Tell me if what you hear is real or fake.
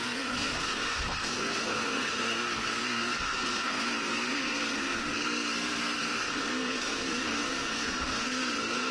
fake